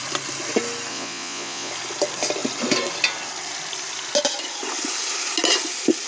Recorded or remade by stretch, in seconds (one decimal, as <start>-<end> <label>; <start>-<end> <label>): 0.0-0.9 recorded; 0.9-1.7 remade; 1.7-6.1 recorded

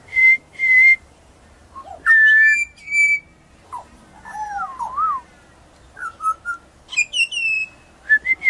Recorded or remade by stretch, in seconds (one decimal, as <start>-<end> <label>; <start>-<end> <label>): 0.0-1.6 remade; 1.6-3.7 recorded; 3.7-4.7 remade; 4.7-8.5 recorded